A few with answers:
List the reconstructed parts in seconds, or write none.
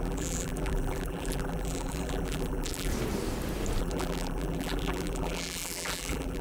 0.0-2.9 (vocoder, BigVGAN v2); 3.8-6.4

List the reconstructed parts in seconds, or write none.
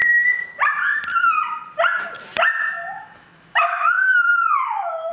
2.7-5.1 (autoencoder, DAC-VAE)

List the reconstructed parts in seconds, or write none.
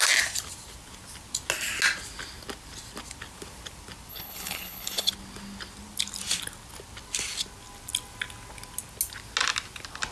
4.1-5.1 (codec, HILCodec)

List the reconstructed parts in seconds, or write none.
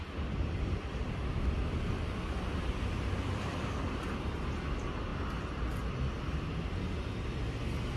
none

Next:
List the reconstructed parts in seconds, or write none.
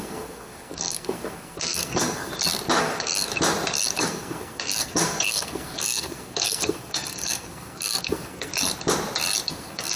0.0-2.3 (codec, SNAC); 2.8-3.3; 4.0-8.5; 9.5-10.0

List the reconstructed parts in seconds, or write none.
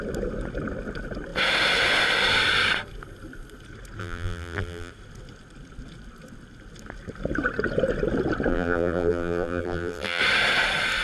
4.0-4.9 (vocoder, BigVGAN v2); 8.5-10.2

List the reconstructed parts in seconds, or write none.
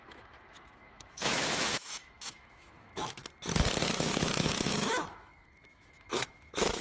0.0-3.2 (autoencoder, DAC-VAE); 3.8-6.8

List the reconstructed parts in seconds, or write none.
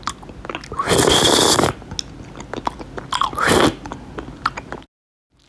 none